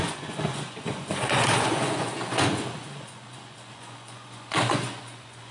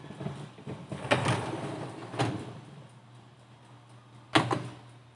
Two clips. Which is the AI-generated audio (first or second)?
first